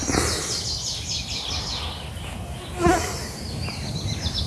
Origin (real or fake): real